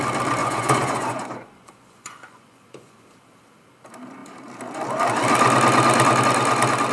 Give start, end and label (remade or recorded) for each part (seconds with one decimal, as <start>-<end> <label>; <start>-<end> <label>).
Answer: 0.0-0.4 recorded; 0.4-3.0 remade; 3.0-6.9 recorded